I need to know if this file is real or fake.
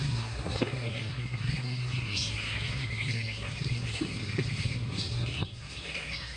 fake